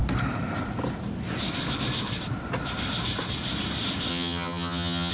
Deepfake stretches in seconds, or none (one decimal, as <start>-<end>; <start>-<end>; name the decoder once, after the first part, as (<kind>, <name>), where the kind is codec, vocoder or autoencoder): 4.1-5.1 (vocoder, HiFi-GAN)